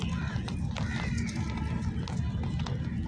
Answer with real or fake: real